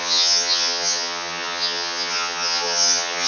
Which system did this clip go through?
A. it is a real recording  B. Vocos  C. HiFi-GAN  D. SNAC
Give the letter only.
C